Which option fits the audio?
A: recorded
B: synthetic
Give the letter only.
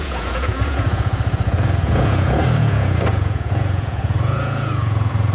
B